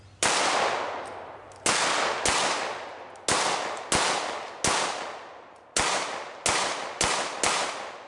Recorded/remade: recorded